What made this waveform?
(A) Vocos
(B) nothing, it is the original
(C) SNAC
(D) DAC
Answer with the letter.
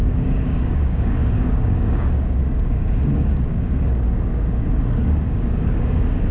D